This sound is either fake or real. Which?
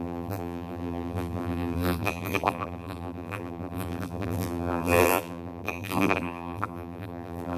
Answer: fake